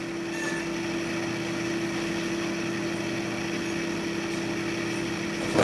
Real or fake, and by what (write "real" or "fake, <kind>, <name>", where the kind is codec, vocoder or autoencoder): real